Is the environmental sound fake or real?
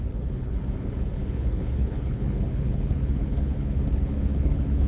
fake